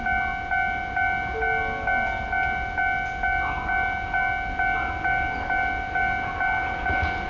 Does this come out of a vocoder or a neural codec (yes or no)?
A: no